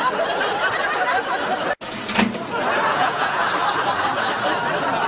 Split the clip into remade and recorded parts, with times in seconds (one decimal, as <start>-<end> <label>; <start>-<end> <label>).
0.0-2.9 recorded; 2.9-3.5 remade; 3.5-5.1 recorded

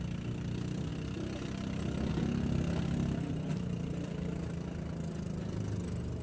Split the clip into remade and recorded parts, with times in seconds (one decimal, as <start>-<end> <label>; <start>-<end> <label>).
0.0-6.2 recorded